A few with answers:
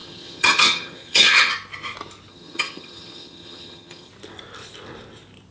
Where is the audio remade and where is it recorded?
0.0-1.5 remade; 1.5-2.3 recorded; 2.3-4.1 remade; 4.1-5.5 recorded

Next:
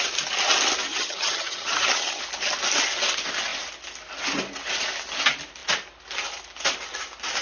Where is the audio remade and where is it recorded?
0.0-0.9 recorded; 0.9-2.2 remade; 2.2-7.4 recorded